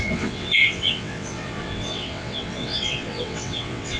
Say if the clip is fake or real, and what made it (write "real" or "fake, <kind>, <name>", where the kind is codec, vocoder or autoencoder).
fake, vocoder, WaveNeXt